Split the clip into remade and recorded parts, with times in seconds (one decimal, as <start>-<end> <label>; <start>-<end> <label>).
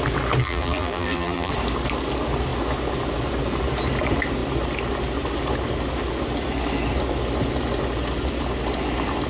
0.0-0.4 recorded; 0.4-1.5 remade; 1.5-9.3 recorded